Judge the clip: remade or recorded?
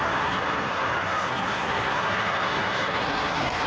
remade